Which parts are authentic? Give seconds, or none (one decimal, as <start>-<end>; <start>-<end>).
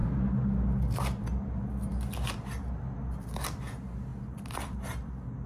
0.0-4.1